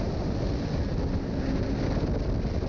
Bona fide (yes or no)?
yes